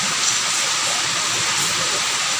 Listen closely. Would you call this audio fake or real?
real